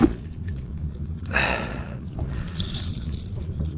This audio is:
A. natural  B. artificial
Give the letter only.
B